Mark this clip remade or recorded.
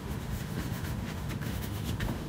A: remade